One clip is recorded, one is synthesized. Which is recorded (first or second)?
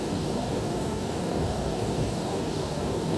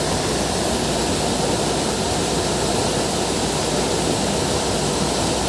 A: second